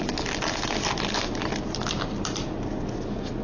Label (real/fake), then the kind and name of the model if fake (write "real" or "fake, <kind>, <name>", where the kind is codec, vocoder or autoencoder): real